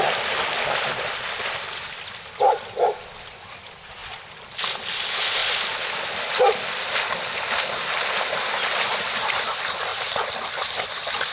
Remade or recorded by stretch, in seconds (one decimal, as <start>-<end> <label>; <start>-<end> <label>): 0.0-4.0 remade; 4.0-4.9 recorded; 4.9-9.9 remade; 9.9-10.5 recorded; 10.5-11.3 remade